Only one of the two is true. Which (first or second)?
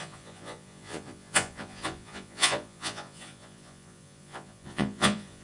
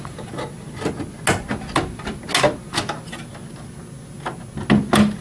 second